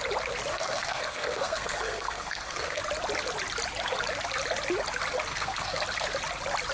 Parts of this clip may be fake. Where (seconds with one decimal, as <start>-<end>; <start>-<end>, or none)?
0.5-2.8; 5.3-5.8